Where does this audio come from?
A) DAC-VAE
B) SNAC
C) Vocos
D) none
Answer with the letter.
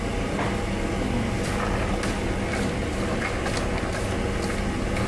D